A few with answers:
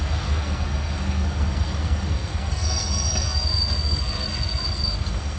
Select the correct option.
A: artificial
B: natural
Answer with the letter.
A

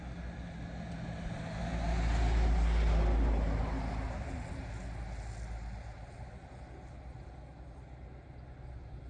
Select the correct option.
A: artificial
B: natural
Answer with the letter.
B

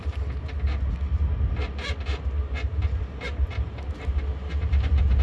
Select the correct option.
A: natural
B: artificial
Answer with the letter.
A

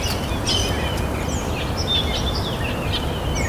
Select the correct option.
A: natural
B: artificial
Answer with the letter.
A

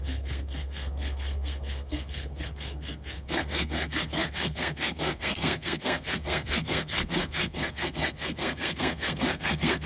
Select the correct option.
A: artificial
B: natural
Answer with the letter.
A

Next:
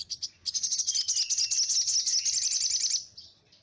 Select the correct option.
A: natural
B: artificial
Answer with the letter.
A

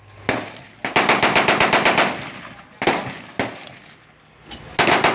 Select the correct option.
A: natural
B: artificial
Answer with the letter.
A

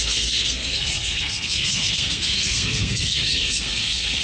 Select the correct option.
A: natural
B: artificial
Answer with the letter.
B